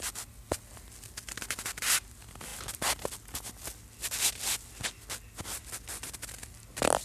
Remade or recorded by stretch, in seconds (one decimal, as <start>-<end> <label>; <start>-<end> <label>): 0.0-7.0 recorded